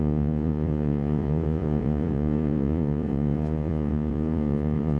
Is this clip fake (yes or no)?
yes